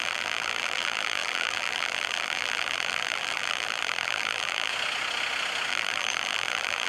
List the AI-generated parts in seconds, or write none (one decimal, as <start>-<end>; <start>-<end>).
0.0-4.7; 5.7-6.9

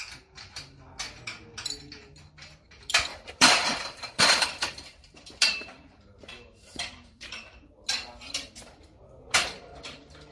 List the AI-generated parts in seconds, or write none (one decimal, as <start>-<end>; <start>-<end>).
3.1-7.7

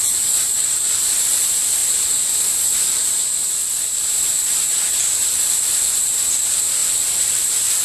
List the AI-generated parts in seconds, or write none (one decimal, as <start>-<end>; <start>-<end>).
0.0-7.8

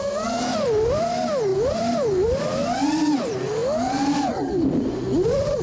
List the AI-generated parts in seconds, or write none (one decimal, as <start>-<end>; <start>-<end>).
1.5-2.2

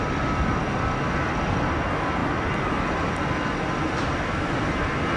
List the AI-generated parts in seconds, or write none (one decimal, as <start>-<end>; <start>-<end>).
none

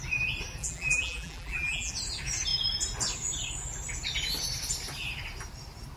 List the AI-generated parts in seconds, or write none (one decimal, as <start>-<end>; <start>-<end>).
0.6-1.9

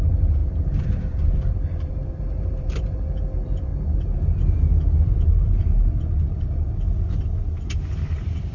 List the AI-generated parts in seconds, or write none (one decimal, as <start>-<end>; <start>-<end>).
0.0-3.7; 7.7-8.5

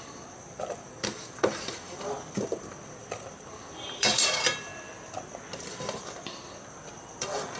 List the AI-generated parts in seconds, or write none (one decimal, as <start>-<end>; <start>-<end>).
0.0-4.7; 5.7-7.6